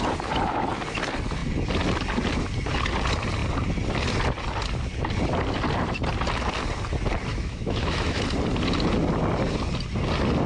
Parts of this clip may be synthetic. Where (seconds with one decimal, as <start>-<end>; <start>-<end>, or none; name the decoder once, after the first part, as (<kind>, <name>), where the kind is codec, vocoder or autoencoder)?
7.3-8.2 (autoencoder, DAC-VAE)